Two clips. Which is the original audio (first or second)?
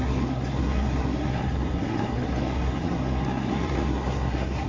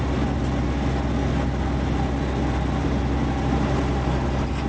second